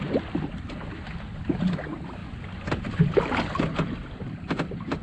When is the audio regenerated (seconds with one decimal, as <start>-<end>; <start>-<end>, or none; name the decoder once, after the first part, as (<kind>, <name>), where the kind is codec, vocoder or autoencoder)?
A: 0.0-2.2 (vocoder, BigVGAN v2); 2.8-5.0

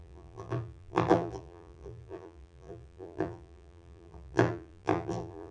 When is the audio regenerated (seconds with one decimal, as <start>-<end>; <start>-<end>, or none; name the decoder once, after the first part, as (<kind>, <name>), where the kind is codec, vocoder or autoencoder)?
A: 0.0-5.5 (vocoder, BigVGAN v2)

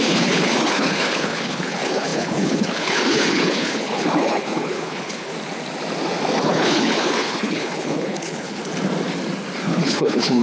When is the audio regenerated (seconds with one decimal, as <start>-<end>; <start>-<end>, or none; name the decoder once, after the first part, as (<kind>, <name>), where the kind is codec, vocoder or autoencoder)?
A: 0.0-5.3 (codec, HILCodec); 6.4-8.6; 9.6-10.4

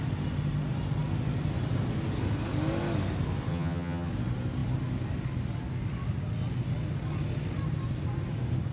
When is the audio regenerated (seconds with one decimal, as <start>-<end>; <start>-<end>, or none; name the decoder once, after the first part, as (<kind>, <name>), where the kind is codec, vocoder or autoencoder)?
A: 3.5-4.1 (vocoder, HiFi-GAN)

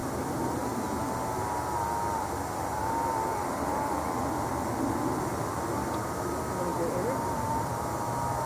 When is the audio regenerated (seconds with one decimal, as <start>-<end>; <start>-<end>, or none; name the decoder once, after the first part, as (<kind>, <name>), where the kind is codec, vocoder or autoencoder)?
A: 0.0-0.7 (vocoder, BigVGAN v2); 2.8-5.2; 6.7-7.8

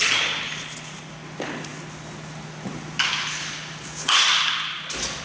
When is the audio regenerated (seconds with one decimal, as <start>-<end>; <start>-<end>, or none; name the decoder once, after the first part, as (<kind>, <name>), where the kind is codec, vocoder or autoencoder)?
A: none